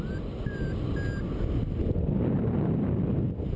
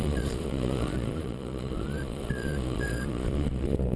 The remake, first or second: second